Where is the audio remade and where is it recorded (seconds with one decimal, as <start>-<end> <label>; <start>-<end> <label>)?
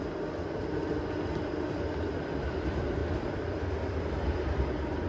0.0-5.1 recorded